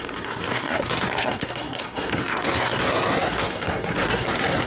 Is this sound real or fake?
fake